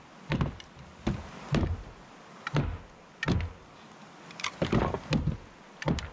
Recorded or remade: recorded